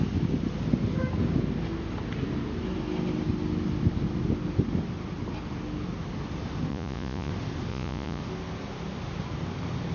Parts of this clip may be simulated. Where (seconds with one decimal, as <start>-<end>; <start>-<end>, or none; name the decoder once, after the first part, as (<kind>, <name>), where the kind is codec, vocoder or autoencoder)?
6.7-7.3 (vocoder, Vocos); 7.7-8.2

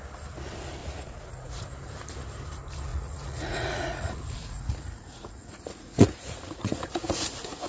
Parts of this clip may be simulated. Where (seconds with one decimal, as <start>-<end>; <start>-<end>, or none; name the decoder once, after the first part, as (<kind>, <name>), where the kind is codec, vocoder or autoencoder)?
0.8-1.6 (vocoder, Vocos); 2.9-7.7

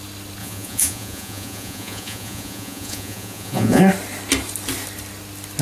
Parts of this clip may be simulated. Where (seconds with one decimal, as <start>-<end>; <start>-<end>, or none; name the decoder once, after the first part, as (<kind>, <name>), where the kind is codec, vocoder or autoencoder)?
0.4-3.8 (vocoder, Vocos)

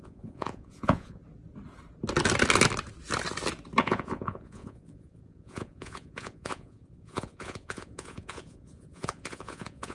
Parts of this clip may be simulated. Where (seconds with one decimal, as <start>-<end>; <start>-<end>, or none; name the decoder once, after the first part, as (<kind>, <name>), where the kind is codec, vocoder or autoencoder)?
0.0-1.2 (vocoder, Vocos); 3.8-9.9

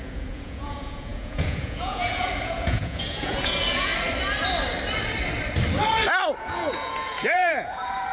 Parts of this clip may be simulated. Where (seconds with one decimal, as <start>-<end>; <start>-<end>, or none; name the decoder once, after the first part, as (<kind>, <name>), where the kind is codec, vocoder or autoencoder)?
0.0-3.9 (vocoder, Vocos); 6.4-8.1

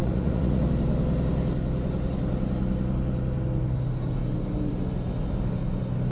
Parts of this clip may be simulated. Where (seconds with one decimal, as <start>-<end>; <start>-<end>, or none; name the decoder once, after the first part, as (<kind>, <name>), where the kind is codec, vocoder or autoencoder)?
0.0-0.6 (vocoder, Vocos)

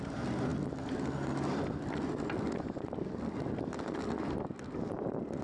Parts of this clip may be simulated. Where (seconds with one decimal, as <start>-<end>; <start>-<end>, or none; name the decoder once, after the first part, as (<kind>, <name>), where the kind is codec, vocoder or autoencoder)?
none